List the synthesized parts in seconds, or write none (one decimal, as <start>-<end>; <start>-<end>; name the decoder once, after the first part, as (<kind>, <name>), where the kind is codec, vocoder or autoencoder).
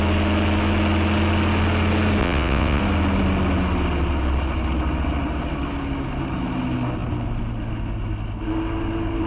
2.2-2.8 (vocoder, WaveNeXt)